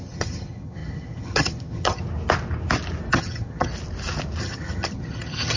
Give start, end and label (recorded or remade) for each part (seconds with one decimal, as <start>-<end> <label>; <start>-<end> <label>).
0.0-2.0 remade; 2.0-3.1 recorded; 3.1-3.7 remade; 3.7-4.4 recorded; 4.4-5.6 remade